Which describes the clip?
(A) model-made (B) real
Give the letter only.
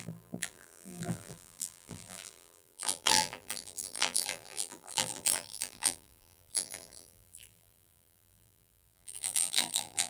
A